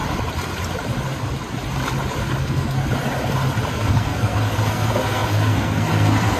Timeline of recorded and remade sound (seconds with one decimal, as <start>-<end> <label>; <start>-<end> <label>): 0.0-2.4 recorded; 2.4-2.8 remade; 2.8-3.7 recorded; 3.7-6.4 remade